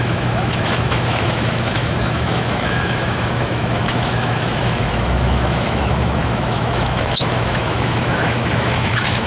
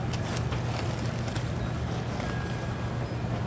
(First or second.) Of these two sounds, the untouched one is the second